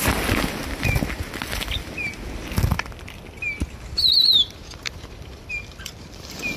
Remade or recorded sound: recorded